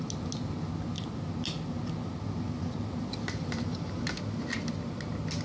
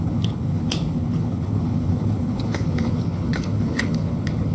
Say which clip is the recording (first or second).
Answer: first